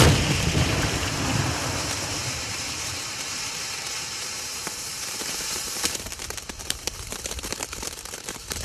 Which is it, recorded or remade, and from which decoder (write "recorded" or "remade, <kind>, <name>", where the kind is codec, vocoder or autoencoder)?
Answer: remade, vocoder, BigVGAN v2